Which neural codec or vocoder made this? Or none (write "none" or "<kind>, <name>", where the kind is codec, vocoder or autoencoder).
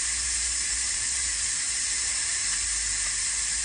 vocoder, BigVGAN v2